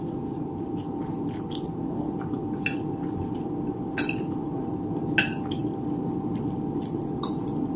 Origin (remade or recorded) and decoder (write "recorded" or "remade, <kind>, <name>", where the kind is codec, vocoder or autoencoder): recorded